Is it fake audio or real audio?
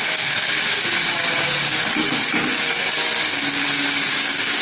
fake